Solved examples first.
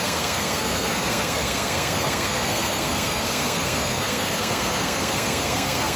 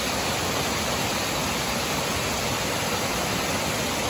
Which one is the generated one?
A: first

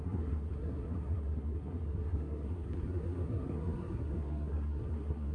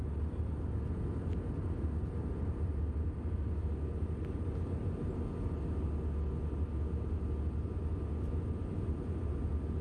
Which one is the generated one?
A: first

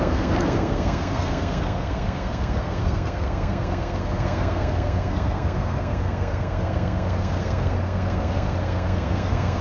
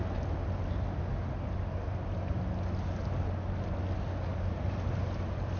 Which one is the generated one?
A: first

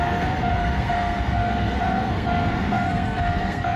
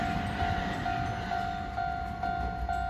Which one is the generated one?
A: first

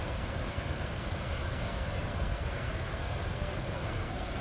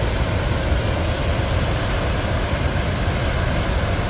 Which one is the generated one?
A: first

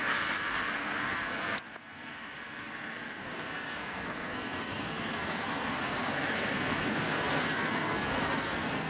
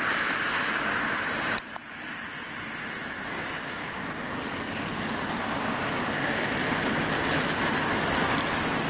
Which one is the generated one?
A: first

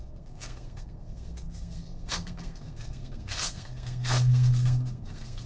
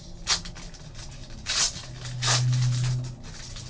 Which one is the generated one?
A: first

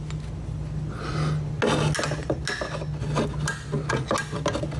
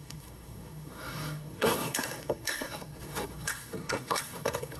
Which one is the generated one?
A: second